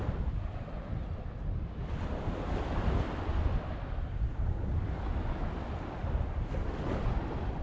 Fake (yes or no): no